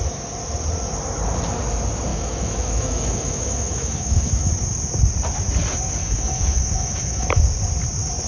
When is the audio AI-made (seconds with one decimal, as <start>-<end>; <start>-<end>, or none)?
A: 2.1-4.5; 6.0-7.4